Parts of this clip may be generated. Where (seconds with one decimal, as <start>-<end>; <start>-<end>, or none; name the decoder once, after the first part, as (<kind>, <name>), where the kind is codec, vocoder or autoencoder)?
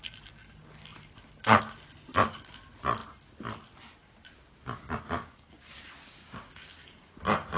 5.2-5.7 (codec, DAC); 6.2-7.1